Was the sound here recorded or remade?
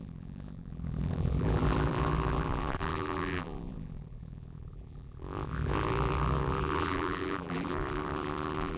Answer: remade